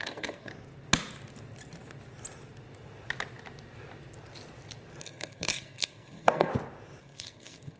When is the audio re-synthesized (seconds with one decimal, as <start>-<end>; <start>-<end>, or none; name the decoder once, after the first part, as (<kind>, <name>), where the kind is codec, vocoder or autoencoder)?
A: 0.0-0.5 (codec, SNAC); 5.0-6.5; 7.0-7.8